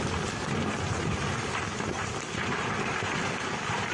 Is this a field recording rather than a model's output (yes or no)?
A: yes